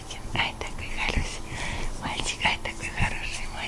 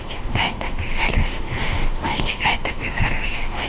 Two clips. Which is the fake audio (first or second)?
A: second